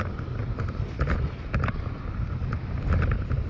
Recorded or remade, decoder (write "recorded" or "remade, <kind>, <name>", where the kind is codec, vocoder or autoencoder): recorded